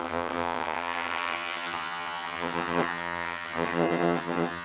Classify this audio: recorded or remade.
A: remade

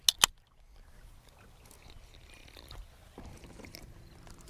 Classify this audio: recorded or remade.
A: recorded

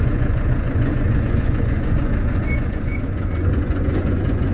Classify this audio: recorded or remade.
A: remade